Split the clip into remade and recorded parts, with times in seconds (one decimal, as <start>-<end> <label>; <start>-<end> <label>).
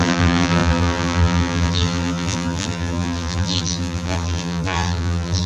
0.0-5.5 remade